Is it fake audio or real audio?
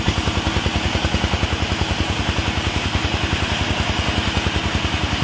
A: real